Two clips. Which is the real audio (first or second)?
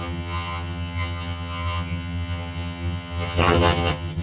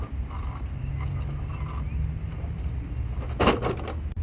second